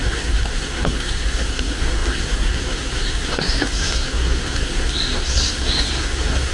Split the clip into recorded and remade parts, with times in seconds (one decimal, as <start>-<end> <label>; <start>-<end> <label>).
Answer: 0.0-6.5 remade